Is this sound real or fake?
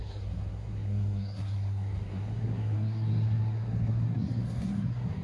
fake